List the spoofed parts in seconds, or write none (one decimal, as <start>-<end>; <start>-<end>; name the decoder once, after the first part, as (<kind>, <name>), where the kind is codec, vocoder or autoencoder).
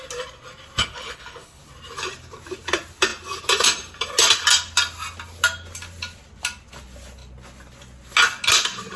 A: 0.8-1.6 (codec, HILCodec)